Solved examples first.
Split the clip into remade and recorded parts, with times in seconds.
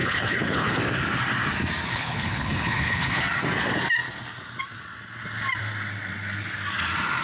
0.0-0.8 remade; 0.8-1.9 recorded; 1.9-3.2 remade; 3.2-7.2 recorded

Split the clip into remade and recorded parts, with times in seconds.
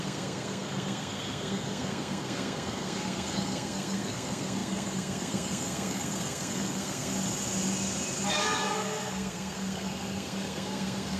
0.0-7.1 remade; 7.1-8.3 recorded; 8.3-11.2 remade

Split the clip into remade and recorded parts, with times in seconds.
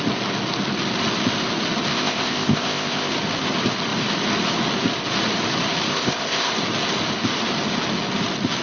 0.0-1.9 recorded; 1.9-3.1 remade; 3.1-5.9 recorded; 5.9-6.5 remade; 6.5-8.6 recorded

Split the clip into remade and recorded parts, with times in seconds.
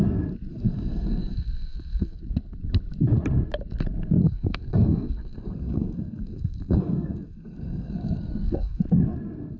0.0-0.5 recorded; 0.5-2.2 remade; 2.2-4.2 recorded; 4.2-8.8 remade; 8.8-9.6 recorded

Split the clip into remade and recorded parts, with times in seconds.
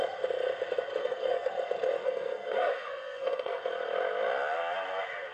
0.0-1.0 recorded; 1.0-1.5 remade; 1.5-2.0 recorded; 2.0-3.6 remade; 3.6-5.3 recorded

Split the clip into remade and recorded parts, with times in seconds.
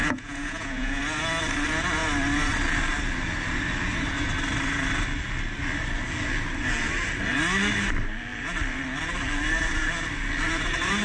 0.0-1.0 remade; 1.0-11.0 recorded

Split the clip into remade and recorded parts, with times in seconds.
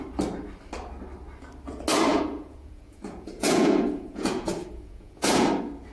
0.0-2.1 recorded; 2.1-5.5 remade; 5.5-5.9 recorded